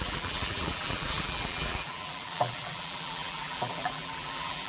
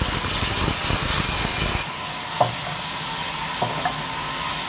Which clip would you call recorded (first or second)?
second